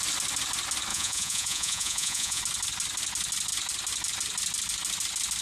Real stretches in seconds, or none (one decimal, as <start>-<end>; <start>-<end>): 0.0-0.9; 2.4-5.4